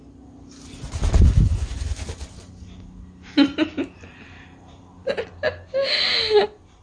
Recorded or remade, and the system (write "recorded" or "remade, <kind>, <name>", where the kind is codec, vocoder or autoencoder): recorded